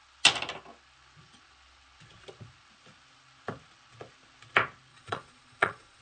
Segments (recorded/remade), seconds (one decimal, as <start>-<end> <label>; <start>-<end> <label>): 0.0-4.9 recorded; 4.9-6.0 remade